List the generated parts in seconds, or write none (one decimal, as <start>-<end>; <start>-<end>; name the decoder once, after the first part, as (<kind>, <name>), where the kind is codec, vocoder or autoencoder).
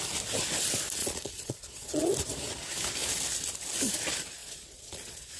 1.0-2.1 (vocoder, Vocos); 4.4-5.4